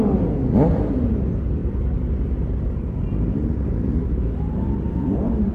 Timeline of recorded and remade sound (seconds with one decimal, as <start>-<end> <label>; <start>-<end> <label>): 0.0-5.5 recorded